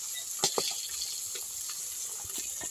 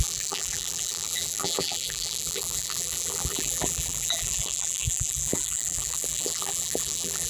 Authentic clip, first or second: first